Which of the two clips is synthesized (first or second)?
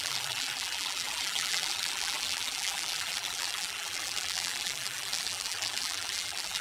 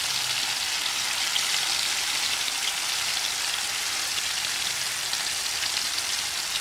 first